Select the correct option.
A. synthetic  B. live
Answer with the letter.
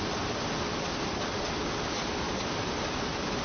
B